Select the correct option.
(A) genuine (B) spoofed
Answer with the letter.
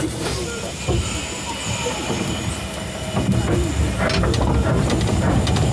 A